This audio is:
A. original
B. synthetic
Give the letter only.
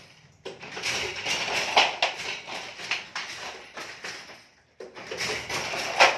A